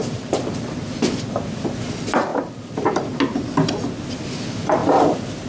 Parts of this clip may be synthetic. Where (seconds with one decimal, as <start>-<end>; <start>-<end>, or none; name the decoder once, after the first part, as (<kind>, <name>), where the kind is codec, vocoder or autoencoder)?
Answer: 0.0-0.9 (vocoder, BigVGAN v2); 2.3-3.2; 4.8-5.5